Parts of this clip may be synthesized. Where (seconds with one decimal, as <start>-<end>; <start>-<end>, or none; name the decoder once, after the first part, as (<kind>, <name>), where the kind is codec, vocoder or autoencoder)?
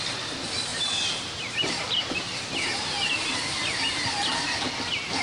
0.7-3.4 (vocoder, BigVGAN v2)